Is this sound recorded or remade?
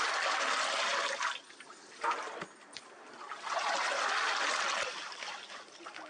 recorded